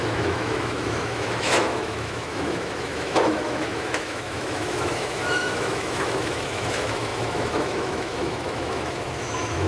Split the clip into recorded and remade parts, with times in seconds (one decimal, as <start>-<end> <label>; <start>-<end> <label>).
0.0-9.7 remade